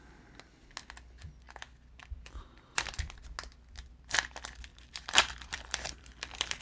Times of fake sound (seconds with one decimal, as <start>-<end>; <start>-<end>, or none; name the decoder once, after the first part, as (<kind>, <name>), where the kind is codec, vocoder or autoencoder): 2.0-2.9 (vocoder, BigVGAN v2); 4.7-6.6